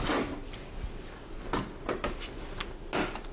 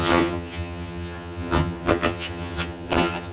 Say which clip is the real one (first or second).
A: first